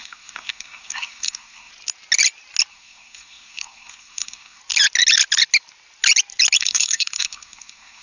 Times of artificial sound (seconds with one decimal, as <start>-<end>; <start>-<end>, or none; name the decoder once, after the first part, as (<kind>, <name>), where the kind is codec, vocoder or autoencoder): 0.0-1.7 (codec, SNAC); 2.7-4.6; 6.6-8.0